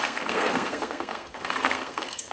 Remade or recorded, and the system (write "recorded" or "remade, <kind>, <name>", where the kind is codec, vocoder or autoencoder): remade, codec, SNAC